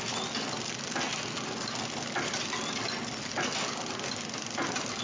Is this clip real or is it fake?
real